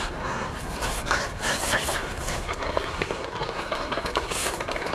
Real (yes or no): no